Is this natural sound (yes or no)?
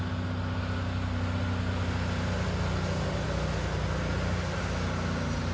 yes